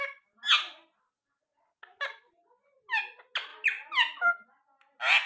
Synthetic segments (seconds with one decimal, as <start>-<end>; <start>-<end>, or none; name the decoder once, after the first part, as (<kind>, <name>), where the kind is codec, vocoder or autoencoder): none